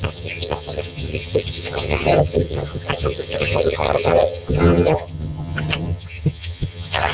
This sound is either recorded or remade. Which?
remade